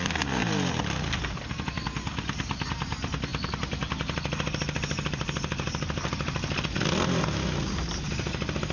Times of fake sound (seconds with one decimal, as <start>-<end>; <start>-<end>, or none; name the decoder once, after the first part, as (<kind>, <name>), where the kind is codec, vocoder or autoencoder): none